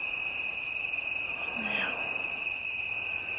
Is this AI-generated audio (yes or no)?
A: no